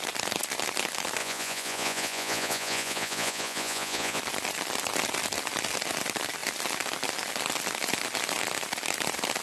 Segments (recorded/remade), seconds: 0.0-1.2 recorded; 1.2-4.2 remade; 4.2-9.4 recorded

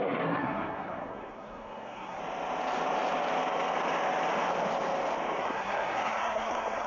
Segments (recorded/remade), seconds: 0.0-2.2 remade; 2.2-5.4 recorded; 5.4-6.9 remade

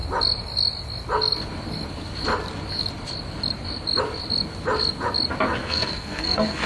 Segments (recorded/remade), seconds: 0.0-5.6 recorded; 5.6-6.7 remade

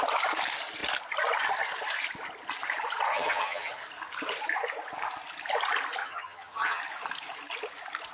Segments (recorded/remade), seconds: 0.0-3.1 recorded; 3.1-3.7 remade; 3.7-6.0 recorded; 6.0-6.8 remade; 6.8-8.1 recorded